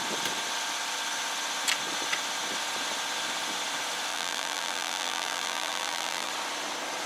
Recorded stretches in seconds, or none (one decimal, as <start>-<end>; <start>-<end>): 0.0-4.1; 6.3-7.1